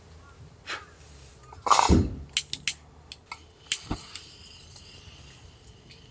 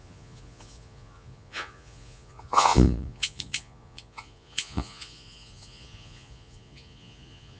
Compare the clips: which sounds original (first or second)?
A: first